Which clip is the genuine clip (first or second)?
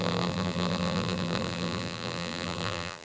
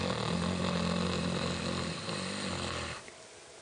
second